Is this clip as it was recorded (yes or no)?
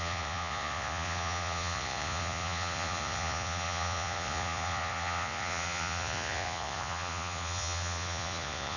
no